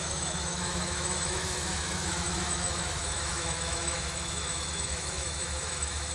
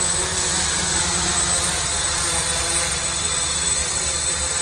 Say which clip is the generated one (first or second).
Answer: first